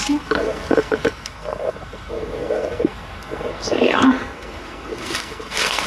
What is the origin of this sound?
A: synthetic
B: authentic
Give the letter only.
A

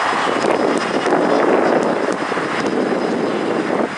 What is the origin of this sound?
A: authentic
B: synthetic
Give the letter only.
A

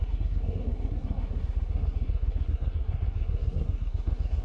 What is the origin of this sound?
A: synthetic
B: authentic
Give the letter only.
A